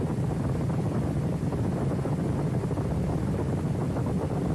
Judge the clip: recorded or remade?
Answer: recorded